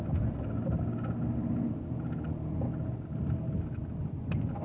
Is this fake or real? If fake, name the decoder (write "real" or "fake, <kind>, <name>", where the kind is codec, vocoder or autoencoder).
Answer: real